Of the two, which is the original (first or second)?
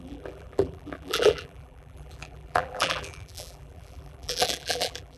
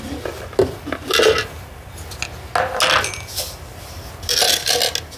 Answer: second